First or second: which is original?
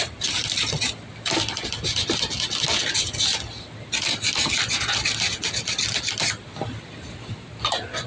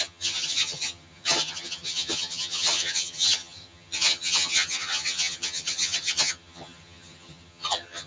first